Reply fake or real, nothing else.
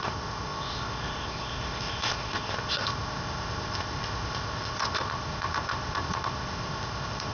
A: fake